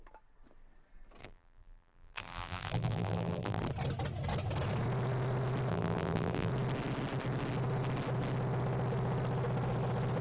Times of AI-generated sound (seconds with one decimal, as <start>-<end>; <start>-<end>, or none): 1.2-3.6; 5.7-6.5